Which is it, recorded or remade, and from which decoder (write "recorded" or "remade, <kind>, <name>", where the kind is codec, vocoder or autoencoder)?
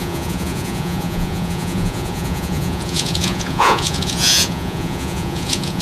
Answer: remade, vocoder, Vocos